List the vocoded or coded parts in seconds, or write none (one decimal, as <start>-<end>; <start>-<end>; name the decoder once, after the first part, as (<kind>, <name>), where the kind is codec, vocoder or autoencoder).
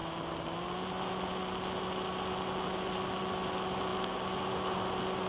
none